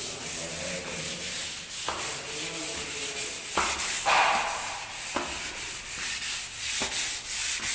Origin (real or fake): real